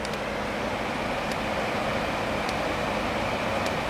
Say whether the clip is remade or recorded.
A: recorded